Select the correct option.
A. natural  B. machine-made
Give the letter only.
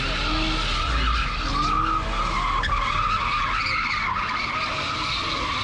A